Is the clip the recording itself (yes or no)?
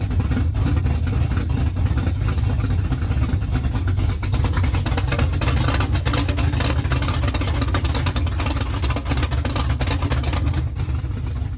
yes